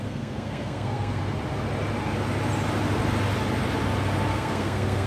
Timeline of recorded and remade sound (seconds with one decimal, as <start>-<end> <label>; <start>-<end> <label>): 0.0-1.2 remade; 1.2-4.3 recorded; 4.3-5.1 remade